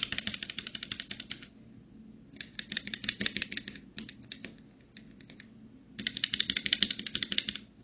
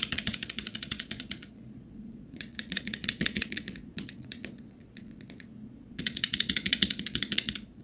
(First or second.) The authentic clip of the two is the first